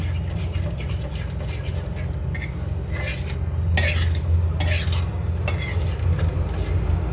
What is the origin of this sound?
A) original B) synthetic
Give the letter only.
A